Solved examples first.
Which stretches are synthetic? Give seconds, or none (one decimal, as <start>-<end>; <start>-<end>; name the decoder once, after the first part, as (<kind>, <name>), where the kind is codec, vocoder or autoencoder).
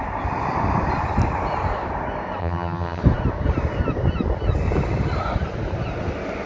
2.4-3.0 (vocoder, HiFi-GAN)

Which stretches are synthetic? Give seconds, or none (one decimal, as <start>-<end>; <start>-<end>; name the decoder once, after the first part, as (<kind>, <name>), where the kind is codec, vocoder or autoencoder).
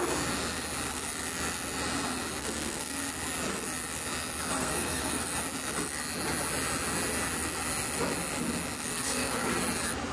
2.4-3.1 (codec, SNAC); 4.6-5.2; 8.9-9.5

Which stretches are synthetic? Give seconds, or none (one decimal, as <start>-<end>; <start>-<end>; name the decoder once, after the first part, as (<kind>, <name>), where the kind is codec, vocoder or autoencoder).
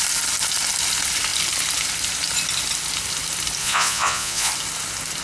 3.6-4.5 (vocoder, Vocos)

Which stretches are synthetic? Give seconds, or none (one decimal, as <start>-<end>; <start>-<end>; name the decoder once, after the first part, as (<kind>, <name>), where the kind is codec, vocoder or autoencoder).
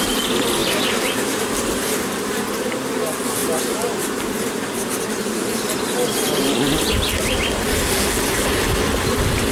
0.6-2.7 (vocoder, BigVGAN v2); 3.4-6.4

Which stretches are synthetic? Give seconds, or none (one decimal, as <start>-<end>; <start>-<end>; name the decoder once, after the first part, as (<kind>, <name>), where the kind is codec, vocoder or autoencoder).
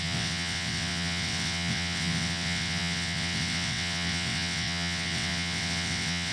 0.0-6.3 (vocoder, WaveNeXt)